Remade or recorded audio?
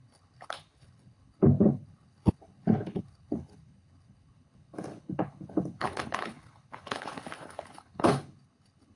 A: remade